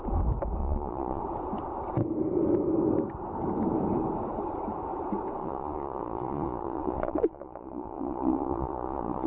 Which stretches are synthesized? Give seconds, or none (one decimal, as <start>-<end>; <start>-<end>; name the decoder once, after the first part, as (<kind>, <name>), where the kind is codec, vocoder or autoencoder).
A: 0.6-1.2 (vocoder, Vocos); 5.4-9.3